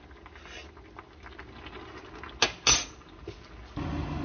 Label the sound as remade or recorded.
recorded